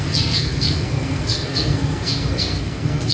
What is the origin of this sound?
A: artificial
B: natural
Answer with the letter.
A